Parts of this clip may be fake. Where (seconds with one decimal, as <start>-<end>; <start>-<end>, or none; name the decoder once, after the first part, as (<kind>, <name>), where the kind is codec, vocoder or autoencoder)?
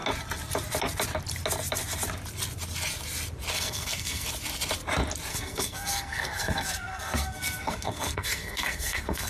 3.5-4.3 (codec, SNAC); 5.3-9.3